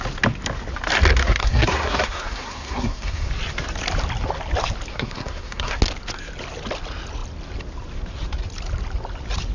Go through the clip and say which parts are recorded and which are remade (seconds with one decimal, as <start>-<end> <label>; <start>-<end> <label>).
0.0-1.2 recorded; 1.2-3.3 remade; 3.3-4.9 recorded; 4.9-5.8 remade; 5.8-9.5 recorded